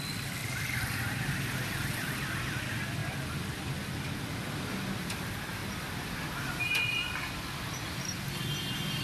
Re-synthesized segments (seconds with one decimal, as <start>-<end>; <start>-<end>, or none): 0.4-2.6; 3.0-3.7

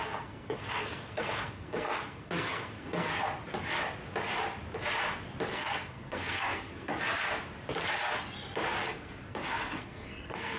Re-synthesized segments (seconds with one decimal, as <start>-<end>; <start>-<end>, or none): 0.0-3.1; 5.5-6.9; 8.9-10.6

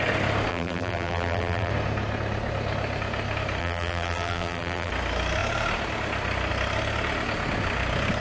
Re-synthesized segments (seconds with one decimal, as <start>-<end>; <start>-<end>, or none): 0.5-1.7; 3.6-4.9

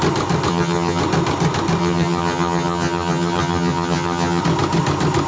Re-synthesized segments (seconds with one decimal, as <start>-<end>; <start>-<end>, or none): 0.5-1.0; 1.8-4.4